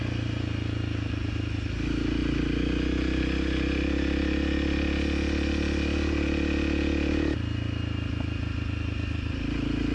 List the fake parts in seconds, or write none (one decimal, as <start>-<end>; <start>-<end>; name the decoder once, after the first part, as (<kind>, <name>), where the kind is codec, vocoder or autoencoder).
none